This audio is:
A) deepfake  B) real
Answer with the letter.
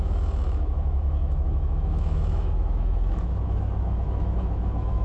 A